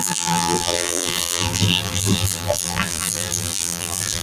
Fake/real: fake